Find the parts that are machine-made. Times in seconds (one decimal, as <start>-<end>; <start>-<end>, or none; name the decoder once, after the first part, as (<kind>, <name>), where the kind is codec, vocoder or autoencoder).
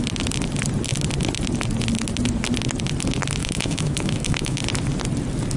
3.4-4.6 (autoencoder, DAC-VAE)